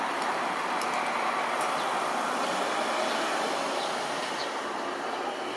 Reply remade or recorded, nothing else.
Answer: recorded